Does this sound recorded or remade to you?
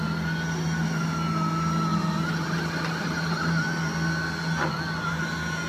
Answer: recorded